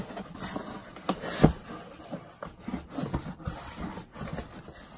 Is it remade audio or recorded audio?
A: recorded